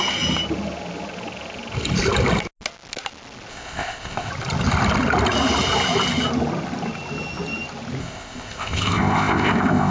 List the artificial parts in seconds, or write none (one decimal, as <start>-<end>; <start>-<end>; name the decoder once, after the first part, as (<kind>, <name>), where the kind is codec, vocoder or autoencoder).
3.5-4.3 (codec, ZipCodec); 8.0-9.9